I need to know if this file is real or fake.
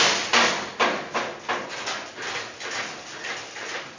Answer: real